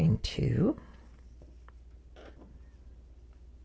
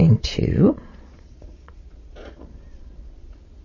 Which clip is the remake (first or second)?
second